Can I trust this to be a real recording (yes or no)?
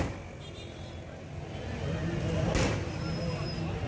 yes